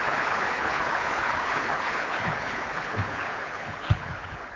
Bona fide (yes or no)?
no